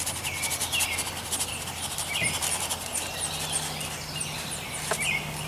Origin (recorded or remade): recorded